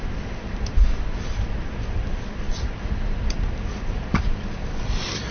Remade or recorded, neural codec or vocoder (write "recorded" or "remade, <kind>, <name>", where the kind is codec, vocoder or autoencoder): recorded